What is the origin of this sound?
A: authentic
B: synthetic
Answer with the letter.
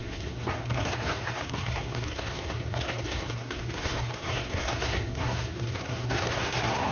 B